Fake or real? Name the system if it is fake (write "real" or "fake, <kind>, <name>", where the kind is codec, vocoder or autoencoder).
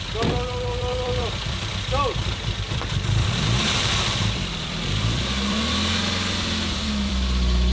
fake, vocoder, BigVGAN v2